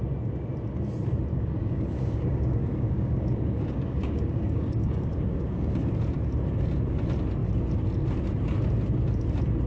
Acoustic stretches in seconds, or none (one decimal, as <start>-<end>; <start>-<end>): 0.0-1.3; 5.9-9.7